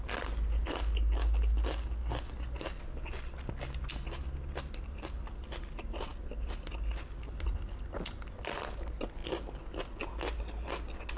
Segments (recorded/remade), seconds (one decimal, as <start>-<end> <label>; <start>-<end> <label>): 0.0-11.2 recorded